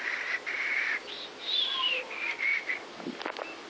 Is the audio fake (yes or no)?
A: no